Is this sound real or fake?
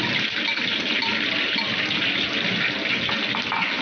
real